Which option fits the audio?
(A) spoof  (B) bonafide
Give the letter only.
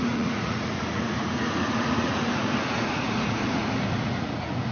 A